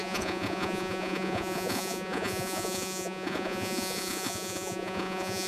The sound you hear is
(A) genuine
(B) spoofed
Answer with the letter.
B